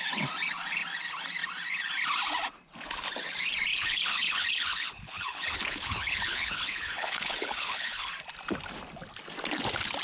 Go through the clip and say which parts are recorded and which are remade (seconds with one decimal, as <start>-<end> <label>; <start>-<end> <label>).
0.0-3.7 recorded; 3.7-8.1 remade; 8.1-10.0 recorded